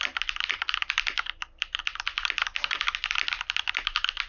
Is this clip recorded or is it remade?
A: recorded